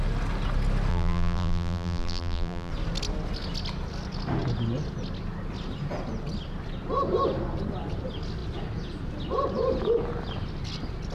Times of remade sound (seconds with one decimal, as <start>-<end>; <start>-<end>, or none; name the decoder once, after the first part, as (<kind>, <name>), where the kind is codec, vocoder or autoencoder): 0.9-2.7 (vocoder, BigVGAN v2)